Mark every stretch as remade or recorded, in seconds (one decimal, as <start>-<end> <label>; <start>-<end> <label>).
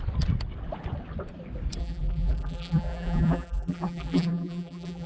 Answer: 0.0-1.8 recorded; 1.8-5.1 remade